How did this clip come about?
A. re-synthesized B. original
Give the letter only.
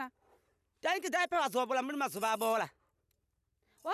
B